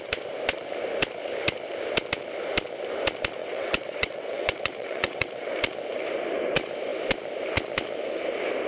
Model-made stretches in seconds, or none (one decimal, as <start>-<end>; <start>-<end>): 3.4-5.5